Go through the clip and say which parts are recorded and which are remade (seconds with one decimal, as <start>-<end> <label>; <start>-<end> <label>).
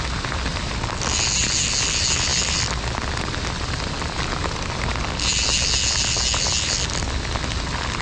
0.0-8.0 recorded